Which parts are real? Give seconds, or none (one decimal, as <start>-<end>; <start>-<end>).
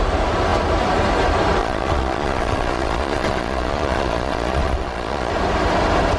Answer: 0.0-1.6; 5.3-6.2